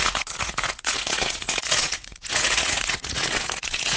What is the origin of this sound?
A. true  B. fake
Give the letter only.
B